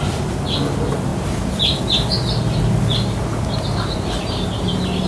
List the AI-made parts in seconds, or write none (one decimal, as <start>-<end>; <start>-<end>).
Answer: none